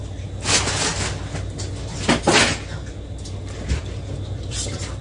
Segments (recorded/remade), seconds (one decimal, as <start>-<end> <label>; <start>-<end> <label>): 0.0-5.0 recorded